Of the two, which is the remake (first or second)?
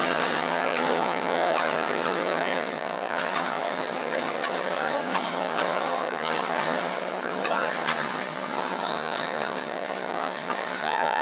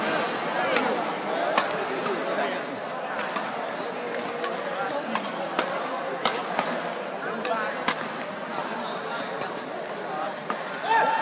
first